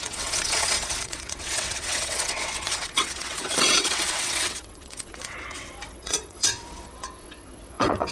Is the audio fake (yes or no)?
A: yes